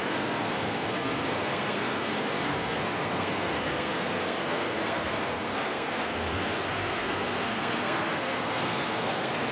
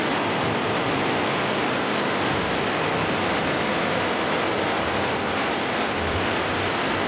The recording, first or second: second